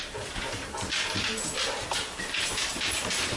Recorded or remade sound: remade